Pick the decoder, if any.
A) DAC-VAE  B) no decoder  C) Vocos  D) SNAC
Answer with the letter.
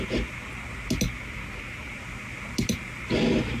B